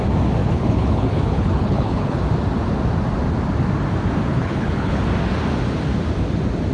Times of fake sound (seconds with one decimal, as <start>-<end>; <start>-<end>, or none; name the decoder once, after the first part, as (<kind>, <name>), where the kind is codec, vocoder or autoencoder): 0.4-2.2 (codec, HILCodec); 4.3-5.0